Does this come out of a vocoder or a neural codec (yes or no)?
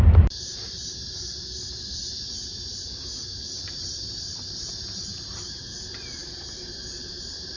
yes